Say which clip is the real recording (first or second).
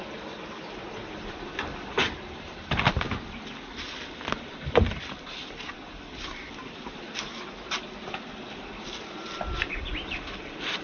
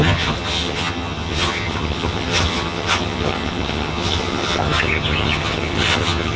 first